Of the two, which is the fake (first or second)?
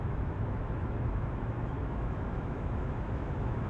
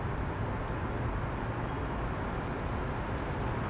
first